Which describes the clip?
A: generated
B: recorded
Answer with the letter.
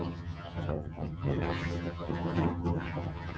A